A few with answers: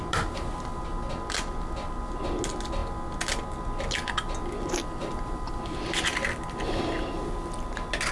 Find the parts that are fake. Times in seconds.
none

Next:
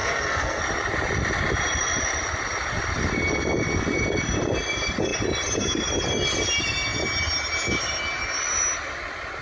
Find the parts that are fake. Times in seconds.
0.0-0.6 (codec, SNAC)

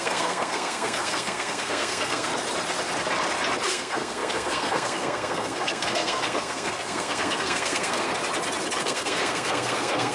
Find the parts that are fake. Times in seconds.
0.0-2.3 (codec, SNAC); 3.7-8.1; 8.8-10.1

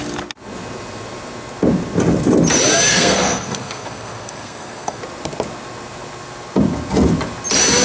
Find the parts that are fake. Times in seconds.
2.9-5.0 (codec, SNAC)